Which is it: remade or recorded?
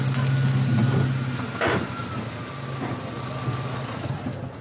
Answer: recorded